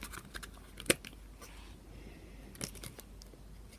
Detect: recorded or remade recorded